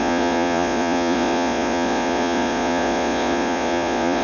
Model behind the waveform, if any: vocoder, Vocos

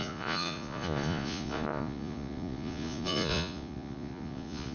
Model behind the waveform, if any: vocoder, Vocos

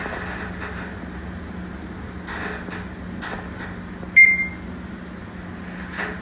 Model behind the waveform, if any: none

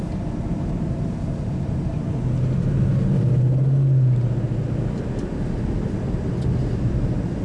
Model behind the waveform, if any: none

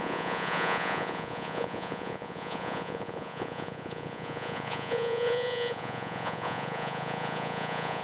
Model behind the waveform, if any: vocoder, Vocos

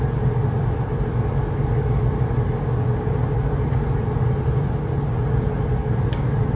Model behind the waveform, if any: none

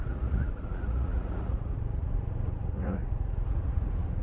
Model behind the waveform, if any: vocoder, Vocos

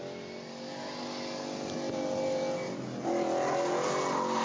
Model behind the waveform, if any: none